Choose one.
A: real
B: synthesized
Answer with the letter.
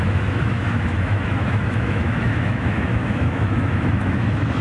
B